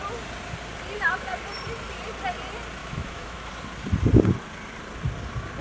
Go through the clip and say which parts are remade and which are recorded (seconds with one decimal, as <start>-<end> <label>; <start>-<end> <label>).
0.0-2.8 recorded; 2.8-3.5 remade; 3.5-5.6 recorded